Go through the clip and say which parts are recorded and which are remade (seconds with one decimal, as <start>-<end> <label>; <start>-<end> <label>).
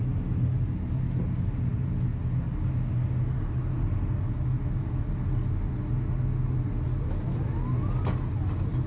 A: 0.0-8.9 recorded